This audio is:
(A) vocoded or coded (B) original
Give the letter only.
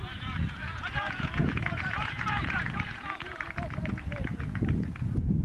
A